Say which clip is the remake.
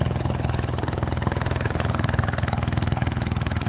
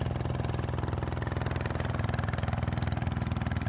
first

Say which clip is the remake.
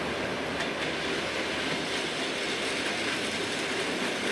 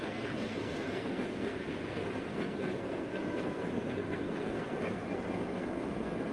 second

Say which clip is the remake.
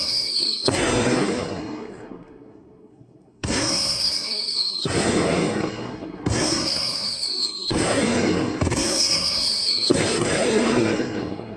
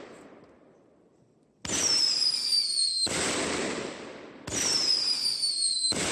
first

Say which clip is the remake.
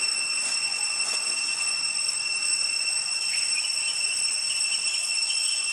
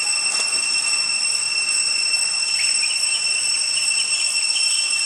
first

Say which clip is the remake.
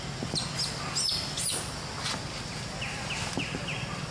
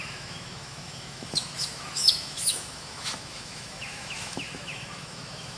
second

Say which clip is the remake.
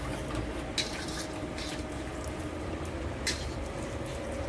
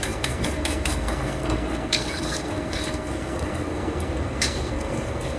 second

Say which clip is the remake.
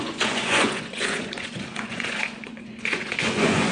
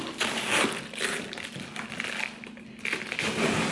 first